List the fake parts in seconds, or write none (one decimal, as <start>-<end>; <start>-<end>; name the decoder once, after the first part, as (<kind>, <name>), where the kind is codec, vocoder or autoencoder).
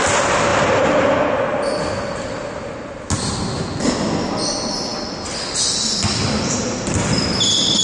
0.5-1.2 (vocoder, BigVGAN v2)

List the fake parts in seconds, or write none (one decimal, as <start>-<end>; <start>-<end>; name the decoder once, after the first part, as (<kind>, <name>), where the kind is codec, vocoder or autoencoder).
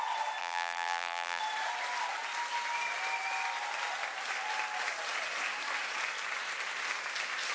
0.4-1.4 (vocoder, BigVGAN v2)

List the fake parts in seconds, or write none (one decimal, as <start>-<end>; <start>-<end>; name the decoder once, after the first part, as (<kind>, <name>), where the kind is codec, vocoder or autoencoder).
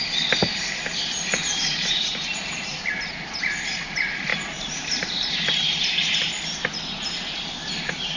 0.4-3.0 (vocoder, BigVGAN v2); 4.3-6.3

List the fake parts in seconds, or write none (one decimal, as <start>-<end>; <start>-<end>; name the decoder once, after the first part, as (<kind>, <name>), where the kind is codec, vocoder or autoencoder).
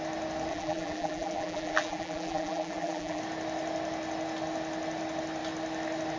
0.5-3.2 (vocoder, BigVGAN v2)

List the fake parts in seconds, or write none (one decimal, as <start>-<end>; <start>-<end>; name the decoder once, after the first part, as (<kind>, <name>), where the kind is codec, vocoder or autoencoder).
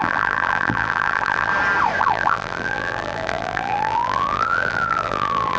0.0-1.5 (vocoder, BigVGAN v2); 2.0-5.6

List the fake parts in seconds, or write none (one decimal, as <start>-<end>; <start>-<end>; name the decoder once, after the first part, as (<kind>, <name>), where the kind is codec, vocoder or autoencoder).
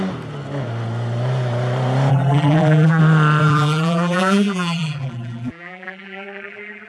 2.1-3.0 (vocoder, BigVGAN v2); 3.4-6.9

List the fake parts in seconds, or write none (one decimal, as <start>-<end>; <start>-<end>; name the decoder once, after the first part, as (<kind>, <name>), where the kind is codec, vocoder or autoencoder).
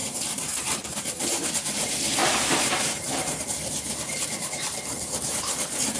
0.0-6.0 (vocoder, BigVGAN v2)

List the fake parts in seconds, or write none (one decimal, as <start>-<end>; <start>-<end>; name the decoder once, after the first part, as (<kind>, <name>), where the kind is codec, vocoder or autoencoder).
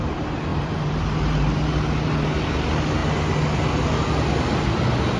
0.5-1.5 (vocoder, BigVGAN v2)